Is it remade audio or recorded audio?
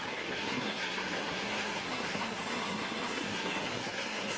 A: remade